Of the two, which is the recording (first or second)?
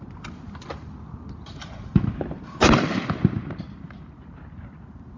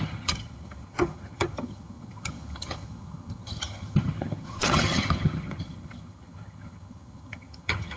first